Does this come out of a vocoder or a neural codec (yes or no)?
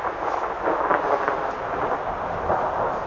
no